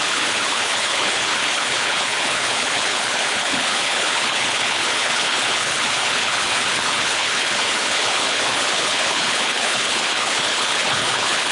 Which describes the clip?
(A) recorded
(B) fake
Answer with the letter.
B